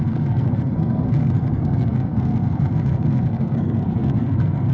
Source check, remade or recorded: remade